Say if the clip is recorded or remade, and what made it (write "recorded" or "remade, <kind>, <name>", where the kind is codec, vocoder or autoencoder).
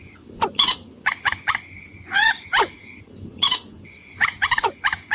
remade, vocoder, Vocos